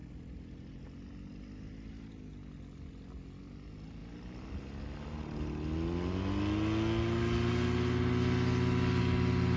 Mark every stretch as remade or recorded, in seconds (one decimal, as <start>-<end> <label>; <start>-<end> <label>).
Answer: 0.0-9.6 recorded